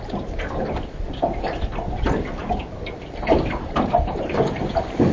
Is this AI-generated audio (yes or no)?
no